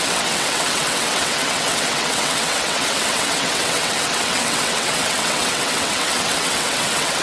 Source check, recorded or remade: remade